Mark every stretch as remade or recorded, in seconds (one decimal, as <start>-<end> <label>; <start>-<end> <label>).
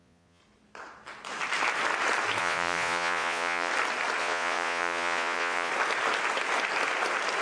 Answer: 0.0-0.4 remade; 0.4-2.4 recorded; 2.4-3.7 remade; 3.7-4.2 recorded; 4.2-5.7 remade; 5.7-7.4 recorded